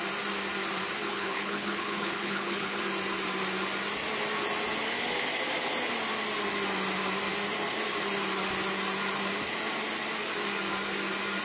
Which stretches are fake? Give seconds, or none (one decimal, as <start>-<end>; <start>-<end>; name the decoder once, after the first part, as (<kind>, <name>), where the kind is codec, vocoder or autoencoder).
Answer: 1.0-2.8 (codec, HILCodec)